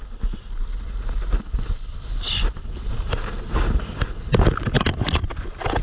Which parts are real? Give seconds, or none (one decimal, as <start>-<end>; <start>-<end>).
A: 0.0-1.9; 3.5-5.8